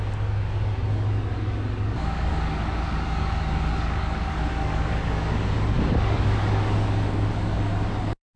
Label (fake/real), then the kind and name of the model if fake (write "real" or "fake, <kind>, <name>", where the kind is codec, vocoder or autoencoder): fake, codec, DAC